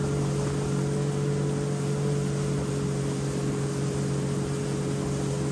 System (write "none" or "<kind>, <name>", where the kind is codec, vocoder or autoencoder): none